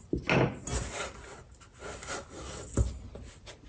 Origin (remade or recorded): recorded